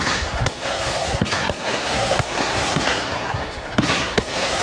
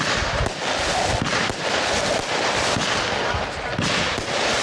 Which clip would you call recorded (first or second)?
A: second